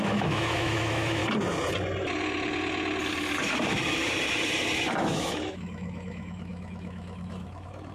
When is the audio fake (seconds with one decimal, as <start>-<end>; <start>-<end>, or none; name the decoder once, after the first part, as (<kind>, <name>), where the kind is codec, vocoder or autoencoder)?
0.0-1.2 (autoencoder, DAC-VAE); 5.0-7.9